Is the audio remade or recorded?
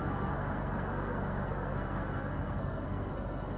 remade